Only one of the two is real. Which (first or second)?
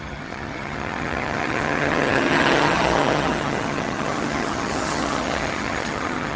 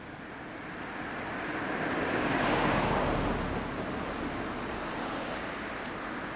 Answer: second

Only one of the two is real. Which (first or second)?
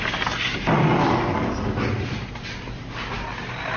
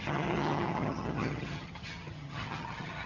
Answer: first